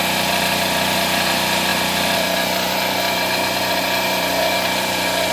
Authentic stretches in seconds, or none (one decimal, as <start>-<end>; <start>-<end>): none